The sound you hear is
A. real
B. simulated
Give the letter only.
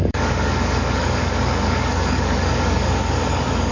B